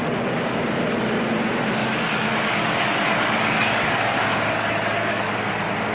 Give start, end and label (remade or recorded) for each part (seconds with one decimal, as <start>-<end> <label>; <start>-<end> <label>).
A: 0.0-1.8 recorded; 1.8-5.3 remade; 5.3-5.9 recorded